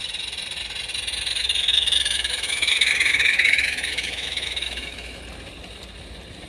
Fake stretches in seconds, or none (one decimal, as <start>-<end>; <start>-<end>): 1.3-5.2